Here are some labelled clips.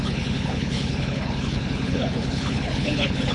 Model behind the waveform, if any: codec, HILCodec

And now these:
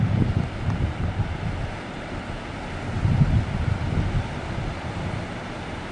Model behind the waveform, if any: none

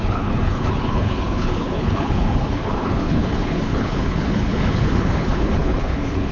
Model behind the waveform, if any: codec, HILCodec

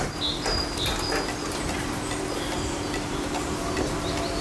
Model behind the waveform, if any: none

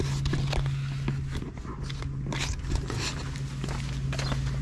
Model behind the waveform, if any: none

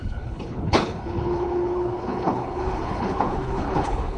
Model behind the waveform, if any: codec, HILCodec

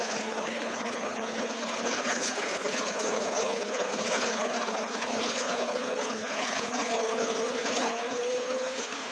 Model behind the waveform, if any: codec, HILCodec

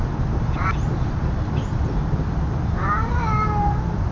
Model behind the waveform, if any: none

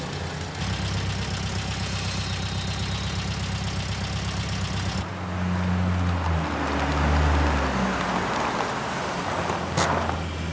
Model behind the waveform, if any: none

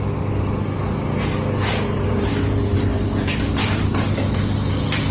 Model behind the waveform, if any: none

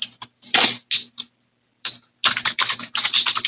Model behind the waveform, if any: none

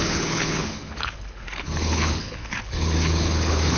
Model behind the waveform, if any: codec, HILCodec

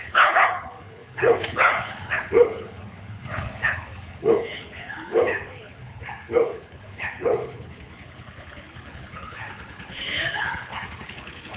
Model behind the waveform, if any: codec, HILCodec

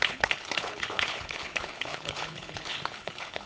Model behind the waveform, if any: codec, HILCodec